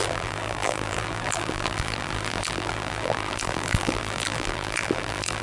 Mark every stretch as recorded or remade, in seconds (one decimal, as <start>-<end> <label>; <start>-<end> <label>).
0.0-5.4 remade